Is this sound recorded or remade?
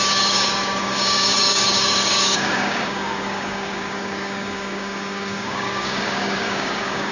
remade